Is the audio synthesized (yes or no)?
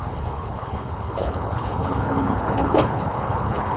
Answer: yes